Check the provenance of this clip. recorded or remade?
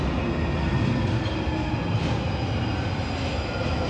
recorded